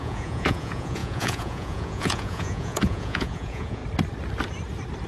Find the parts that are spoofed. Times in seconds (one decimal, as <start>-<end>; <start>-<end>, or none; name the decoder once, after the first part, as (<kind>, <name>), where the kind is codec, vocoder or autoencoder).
0.0-3.8 (vocoder, Vocos)